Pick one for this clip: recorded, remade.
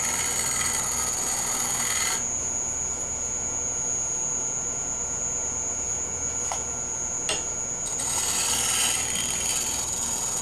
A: recorded